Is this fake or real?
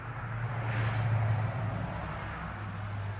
real